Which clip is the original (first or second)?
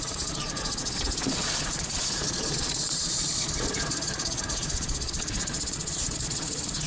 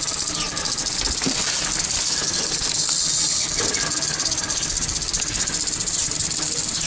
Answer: second